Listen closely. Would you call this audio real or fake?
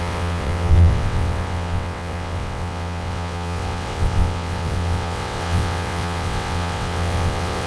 fake